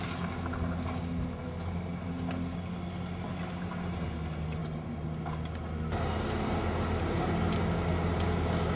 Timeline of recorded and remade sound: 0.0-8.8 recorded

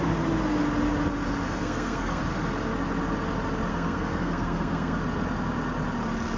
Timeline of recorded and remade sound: 0.0-1.6 recorded; 1.6-2.2 remade; 2.2-3.7 recorded; 3.7-5.0 remade; 5.0-6.4 recorded

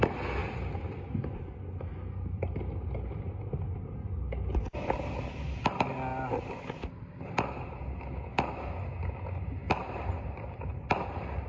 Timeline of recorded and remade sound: 0.0-11.5 recorded

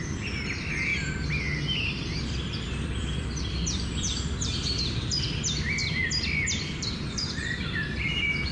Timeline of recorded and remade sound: 0.0-0.9 remade; 0.9-1.8 recorded; 1.8-5.8 remade; 5.8-6.8 recorded; 6.8-8.5 remade

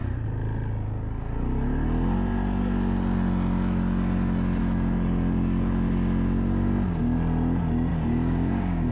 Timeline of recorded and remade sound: 0.0-7.9 recorded; 7.9-8.9 remade

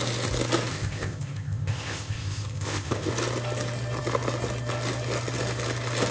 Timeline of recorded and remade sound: 0.0-0.7 recorded; 0.7-3.1 remade; 3.1-6.1 recorded

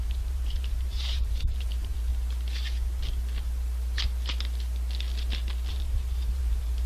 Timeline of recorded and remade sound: 0.0-2.1 remade; 2.1-5.7 recorded; 5.7-6.9 remade